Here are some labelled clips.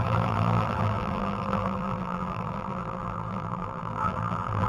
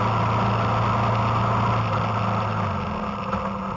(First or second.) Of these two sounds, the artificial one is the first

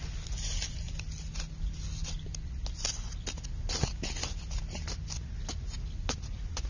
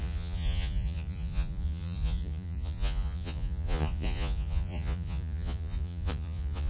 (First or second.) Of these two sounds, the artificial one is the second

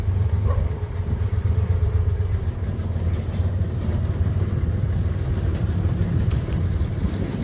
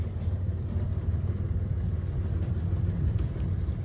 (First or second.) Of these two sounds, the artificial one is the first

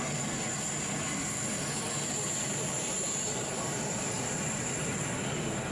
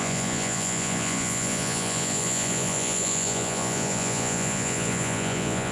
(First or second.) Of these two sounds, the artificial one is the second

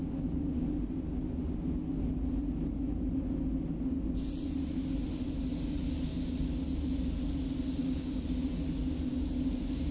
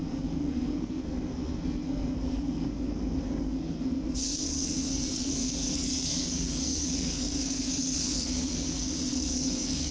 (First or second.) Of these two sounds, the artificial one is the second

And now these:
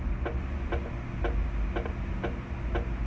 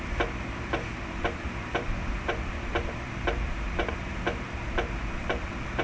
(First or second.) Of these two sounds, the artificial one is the second